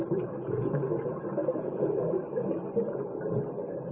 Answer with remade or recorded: recorded